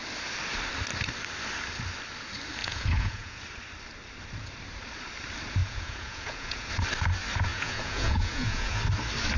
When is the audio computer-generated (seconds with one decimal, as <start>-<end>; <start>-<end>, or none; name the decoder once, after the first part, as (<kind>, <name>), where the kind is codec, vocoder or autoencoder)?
2.6-3.4 (vocoder, Vocos); 5.6-6.7; 7.5-8.8